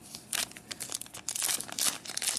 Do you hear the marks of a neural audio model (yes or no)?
no